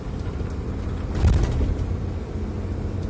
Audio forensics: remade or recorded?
recorded